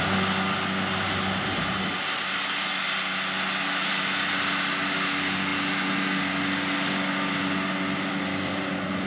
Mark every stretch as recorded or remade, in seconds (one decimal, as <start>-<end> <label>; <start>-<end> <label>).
0.0-9.1 recorded